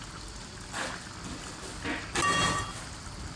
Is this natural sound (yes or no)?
yes